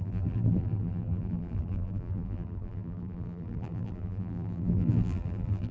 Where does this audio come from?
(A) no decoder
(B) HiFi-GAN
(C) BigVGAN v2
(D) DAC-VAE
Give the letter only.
C